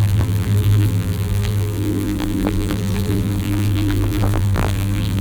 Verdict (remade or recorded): remade